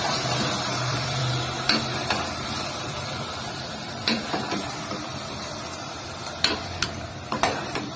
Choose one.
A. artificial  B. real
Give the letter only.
A